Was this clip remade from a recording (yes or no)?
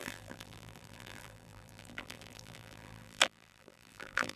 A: yes